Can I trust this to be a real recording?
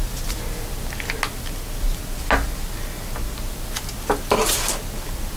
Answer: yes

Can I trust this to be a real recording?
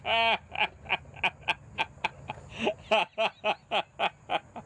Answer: yes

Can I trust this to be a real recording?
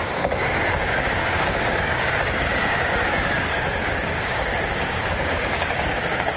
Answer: no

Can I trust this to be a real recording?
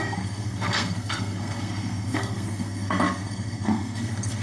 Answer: no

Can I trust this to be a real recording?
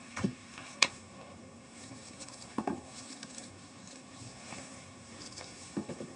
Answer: no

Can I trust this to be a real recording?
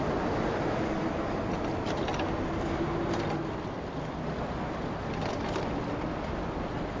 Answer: yes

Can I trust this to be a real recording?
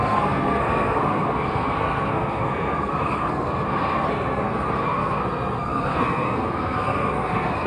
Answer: no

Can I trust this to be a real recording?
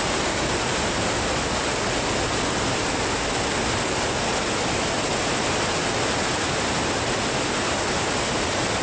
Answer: yes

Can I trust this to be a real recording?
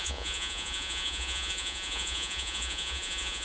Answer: no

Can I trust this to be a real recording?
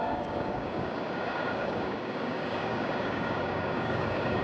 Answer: no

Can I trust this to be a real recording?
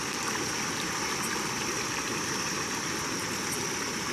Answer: yes